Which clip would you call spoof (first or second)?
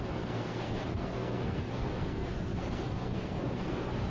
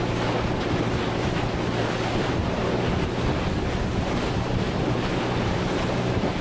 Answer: first